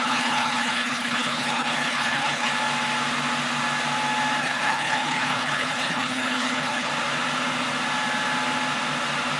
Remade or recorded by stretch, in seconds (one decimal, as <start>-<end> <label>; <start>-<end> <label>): 0.0-2.5 remade; 2.5-4.4 recorded; 4.4-6.9 remade; 6.9-9.4 recorded